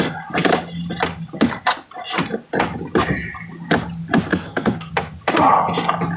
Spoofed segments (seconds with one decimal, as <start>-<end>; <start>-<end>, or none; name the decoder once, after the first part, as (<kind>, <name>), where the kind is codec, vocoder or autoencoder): 4.3-4.9 (codec, SNAC)